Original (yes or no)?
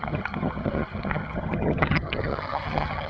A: no